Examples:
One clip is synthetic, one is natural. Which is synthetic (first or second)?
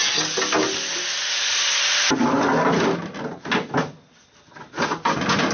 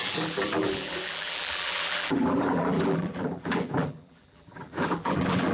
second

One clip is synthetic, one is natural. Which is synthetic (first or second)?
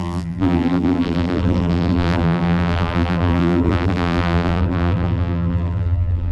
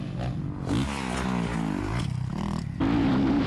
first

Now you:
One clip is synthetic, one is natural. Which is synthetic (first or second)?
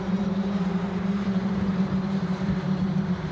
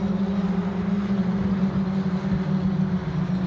first